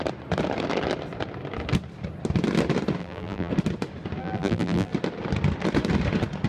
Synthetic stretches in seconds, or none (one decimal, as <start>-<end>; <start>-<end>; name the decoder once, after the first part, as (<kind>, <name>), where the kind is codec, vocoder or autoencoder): 3.0-3.5 (vocoder, BigVGAN v2); 4.2-4.9